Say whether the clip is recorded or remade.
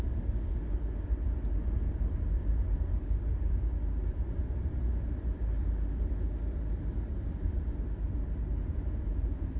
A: remade